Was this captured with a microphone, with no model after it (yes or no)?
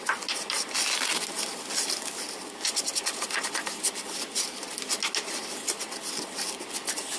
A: yes